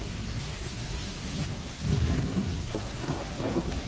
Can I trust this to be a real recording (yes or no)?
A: no